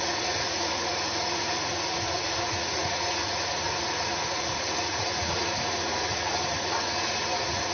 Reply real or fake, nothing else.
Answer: fake